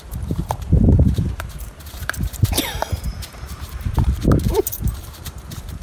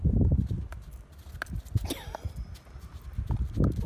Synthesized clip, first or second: first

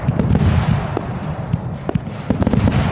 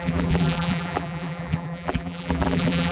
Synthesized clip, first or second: second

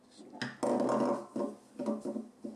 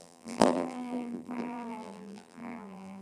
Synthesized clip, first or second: second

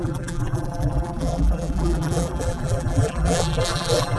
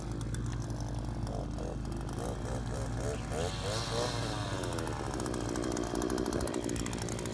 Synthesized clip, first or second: first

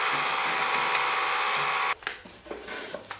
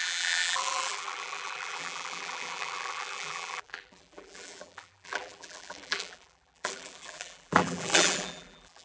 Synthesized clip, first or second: second